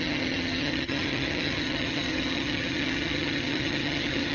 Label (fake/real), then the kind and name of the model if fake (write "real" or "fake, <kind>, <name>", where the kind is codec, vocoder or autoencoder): fake, vocoder, HiFi-GAN